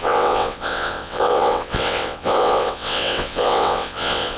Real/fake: fake